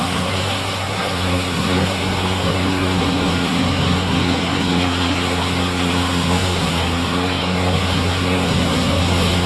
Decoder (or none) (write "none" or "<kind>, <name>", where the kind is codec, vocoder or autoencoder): codec, SNAC